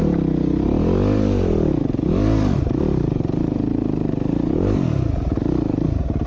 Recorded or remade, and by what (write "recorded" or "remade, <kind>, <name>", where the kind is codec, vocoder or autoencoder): recorded